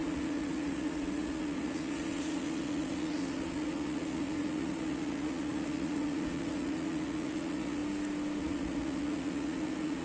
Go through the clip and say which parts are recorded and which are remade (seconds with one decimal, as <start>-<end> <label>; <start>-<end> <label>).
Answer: 0.0-7.8 remade; 7.8-8.4 recorded; 8.4-10.0 remade